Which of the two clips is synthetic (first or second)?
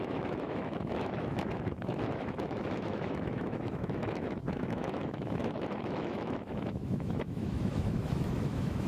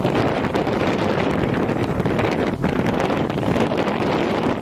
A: first